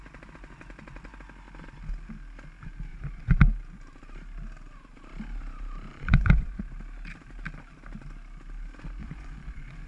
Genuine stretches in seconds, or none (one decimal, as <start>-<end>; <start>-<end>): 0.0-2.9; 3.4-5.9; 6.6-9.0